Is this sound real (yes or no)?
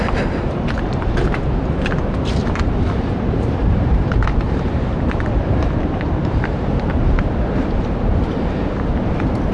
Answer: no